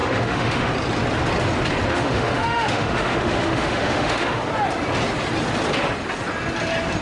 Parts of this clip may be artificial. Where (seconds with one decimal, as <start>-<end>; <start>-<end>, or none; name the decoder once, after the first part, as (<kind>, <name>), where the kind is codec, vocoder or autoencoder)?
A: 0.0-0.7 (autoencoder, DAC-VAE); 1.9-4.4